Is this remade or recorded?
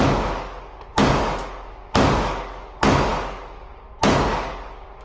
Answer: remade